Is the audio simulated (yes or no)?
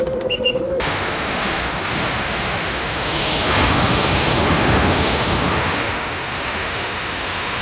yes